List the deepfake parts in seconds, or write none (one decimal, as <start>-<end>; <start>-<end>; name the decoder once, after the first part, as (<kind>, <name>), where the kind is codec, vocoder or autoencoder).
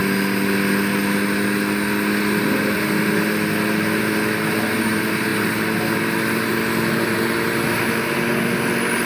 none